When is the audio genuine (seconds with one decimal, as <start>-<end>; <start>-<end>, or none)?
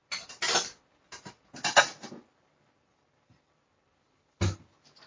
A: 0.0-5.1